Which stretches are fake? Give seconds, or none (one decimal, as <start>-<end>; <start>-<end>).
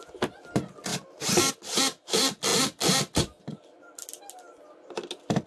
0.9-1.5